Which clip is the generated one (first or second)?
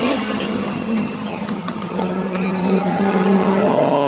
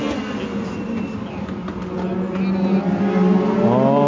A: first